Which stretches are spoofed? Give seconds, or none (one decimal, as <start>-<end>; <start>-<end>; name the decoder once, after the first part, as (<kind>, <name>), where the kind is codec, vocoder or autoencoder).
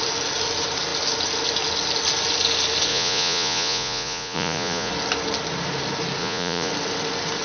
2.9-4.9 (vocoder, Vocos); 6.2-6.7